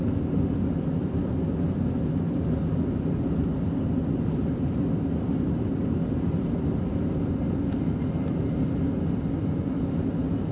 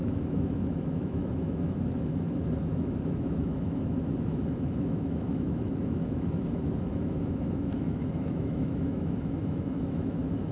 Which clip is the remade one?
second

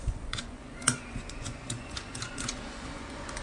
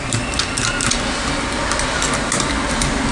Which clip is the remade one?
first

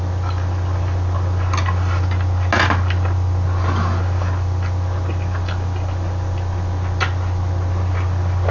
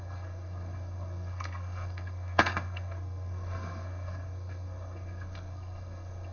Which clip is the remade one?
second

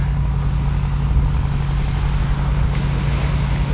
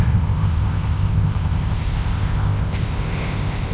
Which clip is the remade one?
second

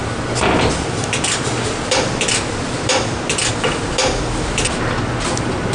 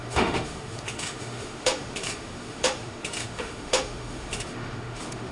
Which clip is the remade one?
second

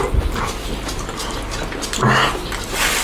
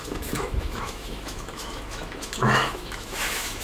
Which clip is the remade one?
second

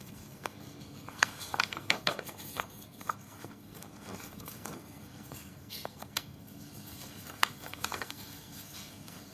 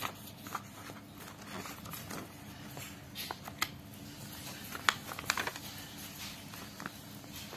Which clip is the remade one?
first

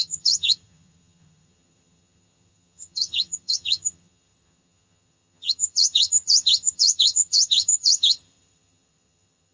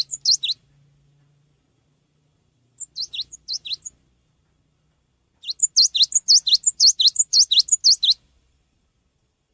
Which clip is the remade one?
first